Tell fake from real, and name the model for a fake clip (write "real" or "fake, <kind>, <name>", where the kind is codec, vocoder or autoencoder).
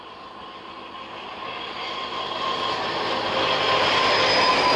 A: real